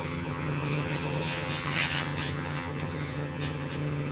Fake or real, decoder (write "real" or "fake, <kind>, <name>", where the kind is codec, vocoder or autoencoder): fake, vocoder, HiFi-GAN